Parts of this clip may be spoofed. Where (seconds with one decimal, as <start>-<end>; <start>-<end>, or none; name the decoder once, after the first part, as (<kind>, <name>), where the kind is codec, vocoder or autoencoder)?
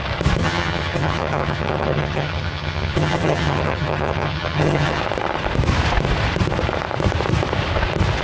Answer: 0.4-5.0 (vocoder, HiFi-GAN)